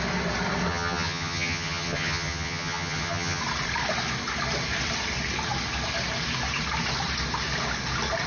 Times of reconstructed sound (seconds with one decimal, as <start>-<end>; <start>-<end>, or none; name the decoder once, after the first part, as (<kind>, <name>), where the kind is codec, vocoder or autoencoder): 0.7-3.4 (vocoder, HiFi-GAN)